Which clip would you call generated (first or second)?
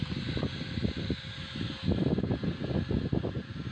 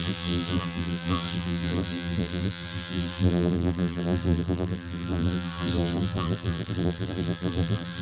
second